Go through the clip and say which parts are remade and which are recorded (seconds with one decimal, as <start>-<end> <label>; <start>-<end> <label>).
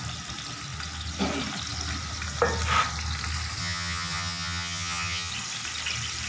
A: 0.0-3.6 recorded; 3.6-5.3 remade; 5.3-6.3 recorded